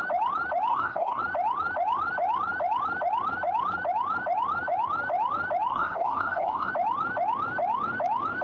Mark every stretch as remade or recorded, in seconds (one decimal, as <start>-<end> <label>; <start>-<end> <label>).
0.0-0.7 recorded; 0.7-1.2 remade; 1.2-5.7 recorded; 5.7-6.7 remade; 6.7-8.4 recorded